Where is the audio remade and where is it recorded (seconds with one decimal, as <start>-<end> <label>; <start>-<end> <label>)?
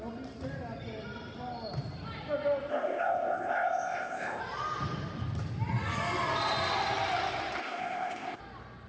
0.0-2.7 recorded; 2.7-4.4 remade; 4.4-7.6 recorded; 7.6-8.4 remade; 8.4-8.9 recorded